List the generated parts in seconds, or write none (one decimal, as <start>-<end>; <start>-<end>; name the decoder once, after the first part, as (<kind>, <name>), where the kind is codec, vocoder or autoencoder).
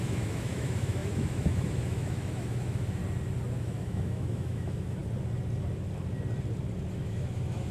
0.0-3.0 (autoencoder, DAC-VAE); 3.6-5.0; 6.9-7.7